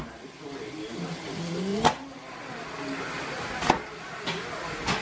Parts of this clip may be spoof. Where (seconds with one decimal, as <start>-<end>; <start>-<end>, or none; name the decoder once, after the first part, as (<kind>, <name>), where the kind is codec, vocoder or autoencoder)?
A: 0.0-1.7 (vocoder, BigVGAN v2)